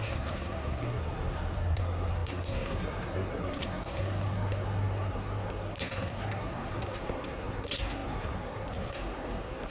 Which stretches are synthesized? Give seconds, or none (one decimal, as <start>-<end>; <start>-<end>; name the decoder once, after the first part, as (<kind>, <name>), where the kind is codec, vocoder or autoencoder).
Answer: 0.0-9.7 (codec, SNAC)